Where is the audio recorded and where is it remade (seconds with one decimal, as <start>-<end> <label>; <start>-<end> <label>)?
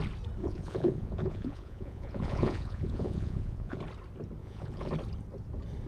0.0-0.4 recorded; 0.4-3.8 remade; 3.8-4.4 recorded; 4.4-4.9 remade; 4.9-5.9 recorded